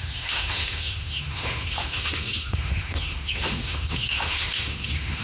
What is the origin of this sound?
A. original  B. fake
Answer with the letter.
B